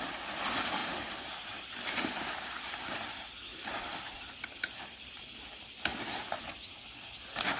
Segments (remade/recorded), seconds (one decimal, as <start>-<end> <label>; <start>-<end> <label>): 0.0-0.8 recorded; 0.8-2.8 remade; 2.8-3.5 recorded; 3.5-5.1 remade; 5.1-7.6 recorded